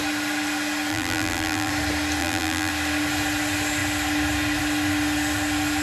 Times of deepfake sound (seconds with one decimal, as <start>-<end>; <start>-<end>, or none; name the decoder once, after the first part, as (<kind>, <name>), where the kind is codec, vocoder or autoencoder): 0.9-1.7 (vocoder, BigVGAN v2); 2.2-2.7